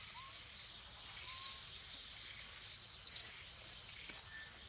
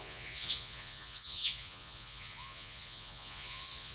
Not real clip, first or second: second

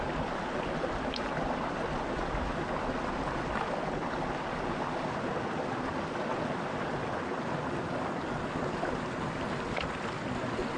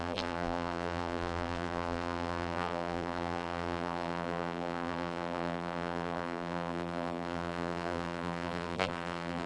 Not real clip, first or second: second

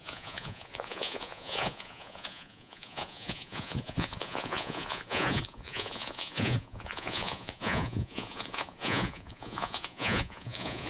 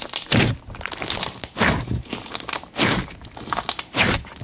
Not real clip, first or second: first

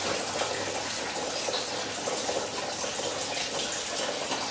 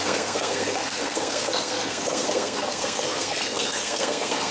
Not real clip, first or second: second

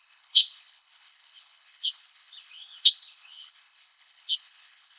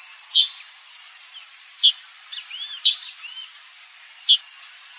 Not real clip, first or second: first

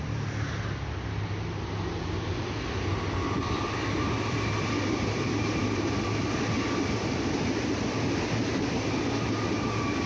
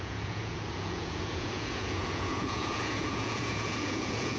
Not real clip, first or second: second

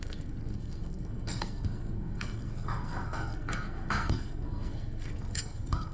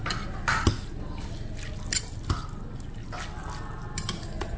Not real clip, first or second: first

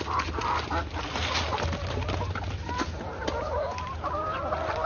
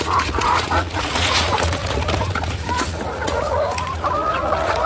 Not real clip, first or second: second